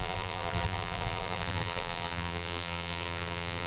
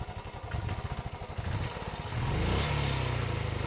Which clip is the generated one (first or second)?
first